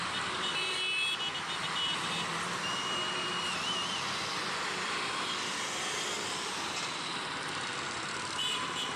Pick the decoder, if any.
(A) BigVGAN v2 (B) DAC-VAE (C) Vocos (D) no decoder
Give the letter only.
A